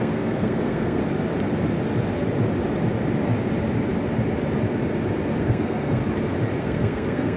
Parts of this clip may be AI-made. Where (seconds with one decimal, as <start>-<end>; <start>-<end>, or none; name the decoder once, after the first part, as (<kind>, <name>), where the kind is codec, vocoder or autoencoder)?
0.0-1.0 (codec, SNAC); 5.4-6.0; 6.6-7.4